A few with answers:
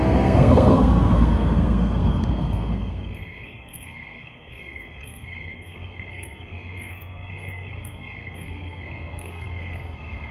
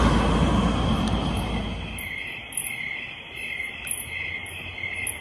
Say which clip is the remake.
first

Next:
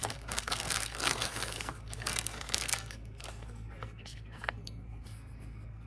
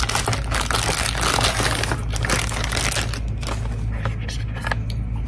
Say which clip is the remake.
first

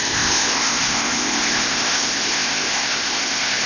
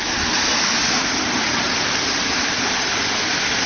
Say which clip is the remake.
first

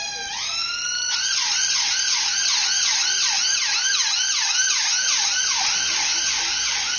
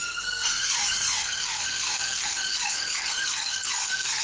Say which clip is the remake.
second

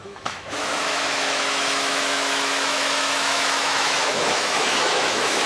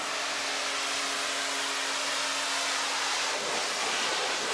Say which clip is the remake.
first